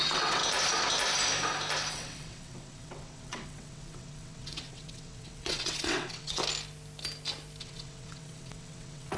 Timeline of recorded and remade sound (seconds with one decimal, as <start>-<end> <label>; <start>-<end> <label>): 0.0-0.4 remade; 0.4-1.9 recorded; 1.9-6.4 remade; 6.4-7.6 recorded; 7.6-9.2 remade